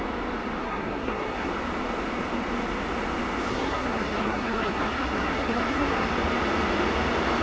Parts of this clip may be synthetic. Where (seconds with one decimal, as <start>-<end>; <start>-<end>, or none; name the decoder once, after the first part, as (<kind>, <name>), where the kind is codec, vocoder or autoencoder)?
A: 0.6-1.5 (codec, SNAC); 3.5-6.1